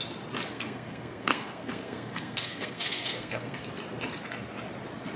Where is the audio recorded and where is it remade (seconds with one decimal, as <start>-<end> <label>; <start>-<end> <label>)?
0.0-0.5 recorded; 0.5-3.6 remade; 3.6-5.2 recorded